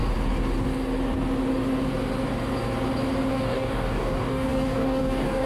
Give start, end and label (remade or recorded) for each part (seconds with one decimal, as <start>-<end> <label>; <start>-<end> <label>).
0.0-3.3 recorded; 3.3-5.5 remade